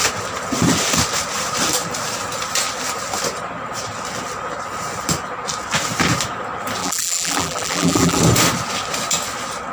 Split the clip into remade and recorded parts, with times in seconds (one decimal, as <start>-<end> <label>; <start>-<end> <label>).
0.0-6.8 recorded; 6.8-8.2 remade; 8.2-9.7 recorded